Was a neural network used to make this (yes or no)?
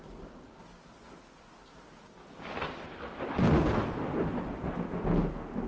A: no